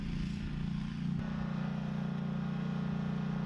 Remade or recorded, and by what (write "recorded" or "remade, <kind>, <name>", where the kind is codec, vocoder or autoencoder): recorded